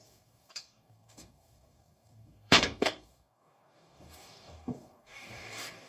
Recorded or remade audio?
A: remade